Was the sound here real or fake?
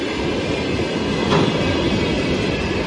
real